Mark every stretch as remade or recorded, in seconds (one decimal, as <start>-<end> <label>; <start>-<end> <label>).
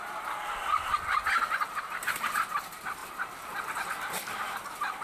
0.0-5.0 recorded